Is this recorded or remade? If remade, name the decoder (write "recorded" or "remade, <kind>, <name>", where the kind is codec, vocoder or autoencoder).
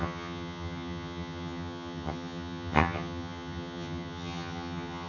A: remade, vocoder, HiFi-GAN